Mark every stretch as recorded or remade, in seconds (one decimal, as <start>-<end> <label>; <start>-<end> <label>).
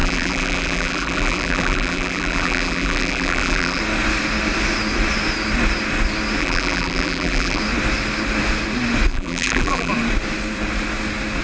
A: 0.0-3.8 remade; 3.8-6.4 recorded; 6.4-7.6 remade; 7.6-9.1 recorded; 9.1-9.9 remade; 9.9-11.4 recorded